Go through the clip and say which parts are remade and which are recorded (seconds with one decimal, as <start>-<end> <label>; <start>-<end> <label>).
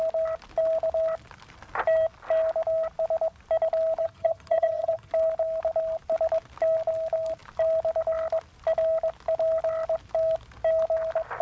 0.0-4.0 recorded; 4.0-5.1 remade; 5.1-11.4 recorded